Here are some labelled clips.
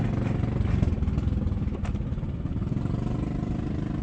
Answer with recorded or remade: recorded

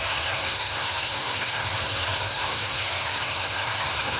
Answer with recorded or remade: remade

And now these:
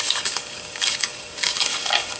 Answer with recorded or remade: remade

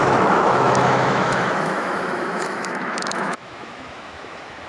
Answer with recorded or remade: remade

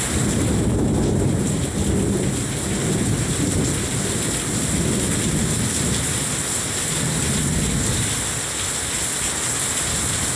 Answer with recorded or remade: recorded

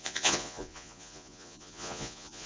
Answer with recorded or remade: remade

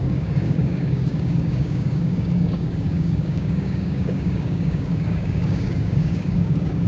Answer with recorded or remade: remade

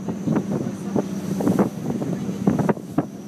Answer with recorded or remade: recorded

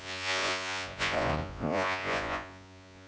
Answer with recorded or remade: remade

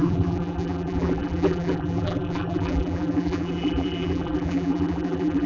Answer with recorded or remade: remade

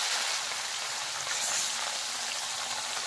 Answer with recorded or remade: recorded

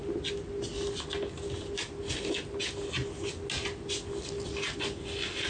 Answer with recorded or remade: recorded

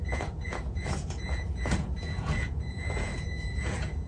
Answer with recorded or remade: remade